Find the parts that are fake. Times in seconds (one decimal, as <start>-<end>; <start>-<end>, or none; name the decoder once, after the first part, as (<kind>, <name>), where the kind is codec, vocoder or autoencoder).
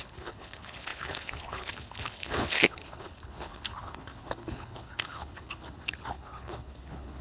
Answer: 0.0-7.2 (codec, HILCodec)